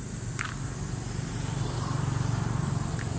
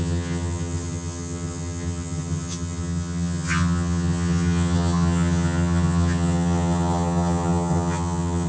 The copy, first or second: second